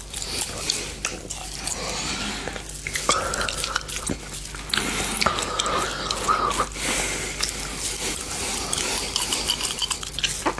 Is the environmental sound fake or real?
real